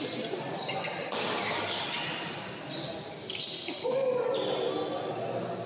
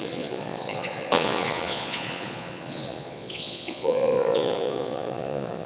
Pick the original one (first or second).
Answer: first